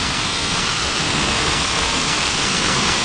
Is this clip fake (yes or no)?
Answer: yes